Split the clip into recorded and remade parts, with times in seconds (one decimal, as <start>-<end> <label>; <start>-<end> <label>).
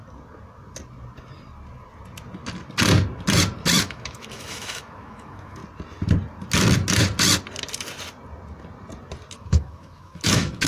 0.0-3.8 recorded; 3.8-5.6 remade; 5.6-9.3 recorded; 9.3-10.7 remade